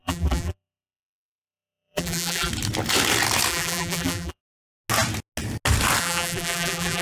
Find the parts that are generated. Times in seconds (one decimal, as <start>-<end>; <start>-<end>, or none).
0.0-2.5; 3.5-4.4; 6.0-7.0